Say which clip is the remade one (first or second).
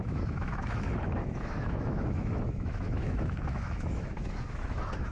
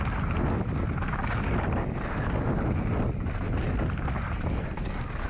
first